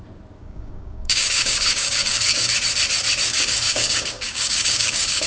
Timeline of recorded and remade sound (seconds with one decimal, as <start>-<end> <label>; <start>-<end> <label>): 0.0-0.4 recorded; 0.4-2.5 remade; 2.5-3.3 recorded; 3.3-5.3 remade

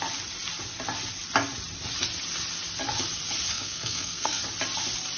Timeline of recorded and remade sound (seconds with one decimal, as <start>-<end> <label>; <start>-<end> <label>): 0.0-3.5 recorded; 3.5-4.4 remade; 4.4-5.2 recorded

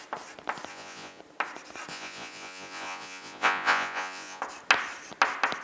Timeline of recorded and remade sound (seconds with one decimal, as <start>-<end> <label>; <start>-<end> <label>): 0.0-0.7 recorded; 0.7-1.2 remade; 1.2-1.9 recorded; 1.9-4.4 remade; 4.4-5.6 recorded

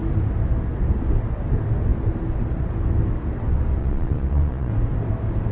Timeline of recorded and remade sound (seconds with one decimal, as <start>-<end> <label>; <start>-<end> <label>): 0.0-3.8 recorded; 3.8-4.7 remade; 4.7-5.5 recorded

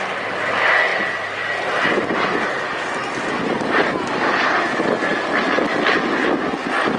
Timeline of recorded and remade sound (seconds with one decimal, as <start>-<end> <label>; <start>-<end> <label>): 0.0-7.0 recorded